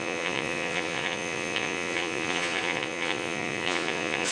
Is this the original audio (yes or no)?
no